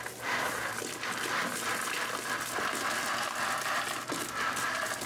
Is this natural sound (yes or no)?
yes